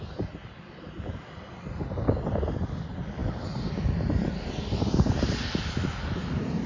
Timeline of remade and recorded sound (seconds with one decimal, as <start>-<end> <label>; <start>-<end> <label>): 0.0-6.7 recorded